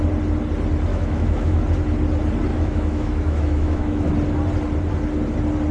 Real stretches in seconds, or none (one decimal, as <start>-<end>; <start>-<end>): 0.0-0.9; 1.6-2.5; 4.1-5.7